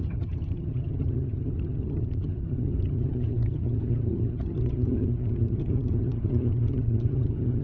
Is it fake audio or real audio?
fake